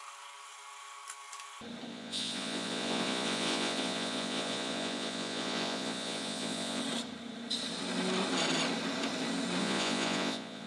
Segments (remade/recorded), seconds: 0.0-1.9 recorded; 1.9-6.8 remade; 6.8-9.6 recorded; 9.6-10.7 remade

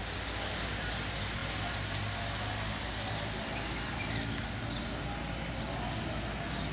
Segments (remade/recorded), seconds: 0.0-6.7 recorded